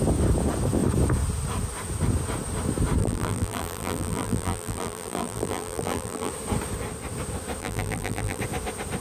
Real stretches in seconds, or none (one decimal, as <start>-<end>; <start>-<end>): 0.0-3.0; 6.3-7.6; 8.4-9.0